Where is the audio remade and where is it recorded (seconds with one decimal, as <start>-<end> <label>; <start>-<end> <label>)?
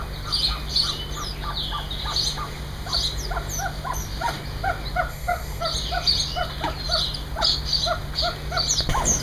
0.0-5.1 recorded; 5.1-5.6 remade; 5.6-9.2 recorded